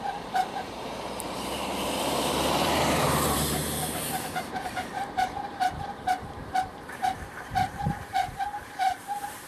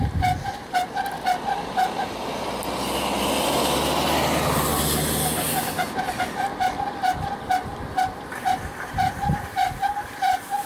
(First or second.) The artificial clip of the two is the first